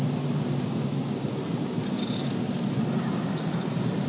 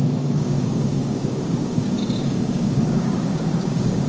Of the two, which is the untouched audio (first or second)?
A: first